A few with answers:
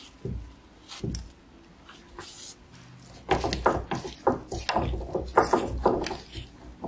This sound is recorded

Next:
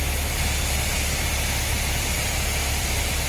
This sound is recorded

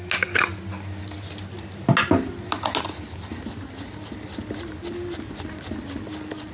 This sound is recorded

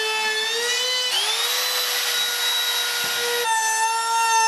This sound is recorded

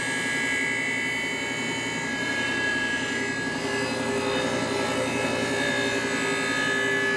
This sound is recorded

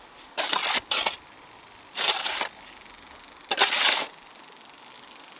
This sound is recorded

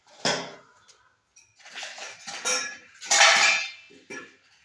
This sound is recorded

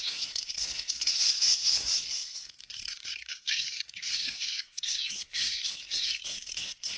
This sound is remade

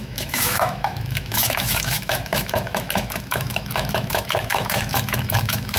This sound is remade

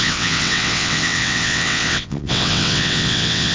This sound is remade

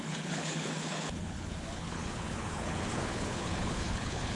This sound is remade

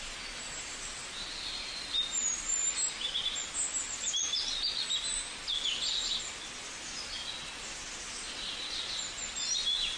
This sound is recorded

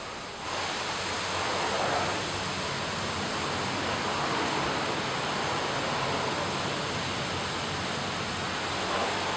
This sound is recorded